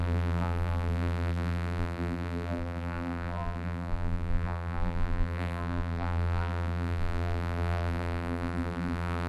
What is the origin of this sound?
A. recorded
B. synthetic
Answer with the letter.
B